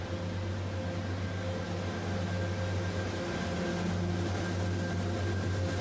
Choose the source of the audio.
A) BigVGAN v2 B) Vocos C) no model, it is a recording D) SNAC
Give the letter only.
C